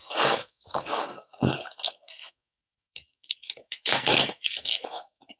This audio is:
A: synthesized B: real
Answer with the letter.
A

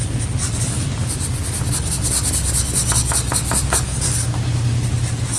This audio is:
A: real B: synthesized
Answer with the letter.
A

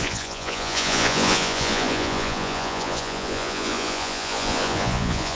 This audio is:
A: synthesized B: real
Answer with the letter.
A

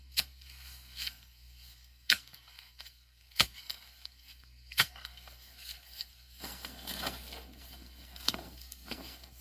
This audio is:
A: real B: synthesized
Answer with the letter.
B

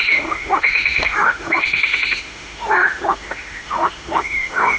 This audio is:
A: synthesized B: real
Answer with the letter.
A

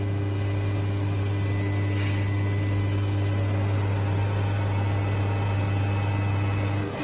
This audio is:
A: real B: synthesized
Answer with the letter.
A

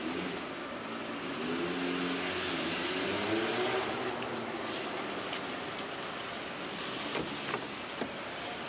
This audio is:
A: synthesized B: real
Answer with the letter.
B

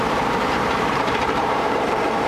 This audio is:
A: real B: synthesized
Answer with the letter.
B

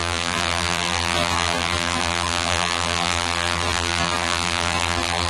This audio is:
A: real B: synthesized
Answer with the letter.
B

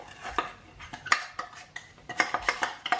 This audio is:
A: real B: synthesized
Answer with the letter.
A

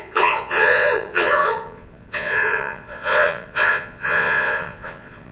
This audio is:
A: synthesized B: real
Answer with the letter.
A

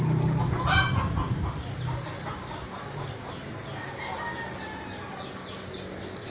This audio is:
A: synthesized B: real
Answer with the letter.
B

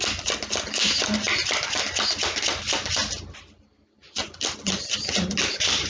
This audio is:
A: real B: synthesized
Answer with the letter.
A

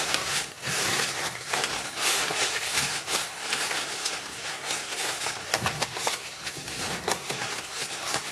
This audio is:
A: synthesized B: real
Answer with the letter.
A